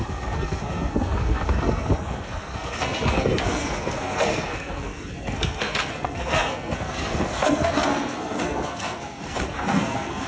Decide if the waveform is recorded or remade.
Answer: remade